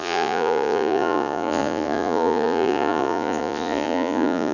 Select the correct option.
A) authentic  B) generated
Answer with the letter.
B